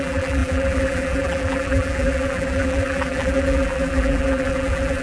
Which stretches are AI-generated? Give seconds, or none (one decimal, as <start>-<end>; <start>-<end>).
0.0-5.0